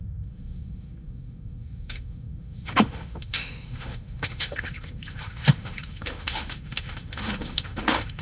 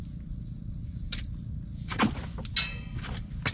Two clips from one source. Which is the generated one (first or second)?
first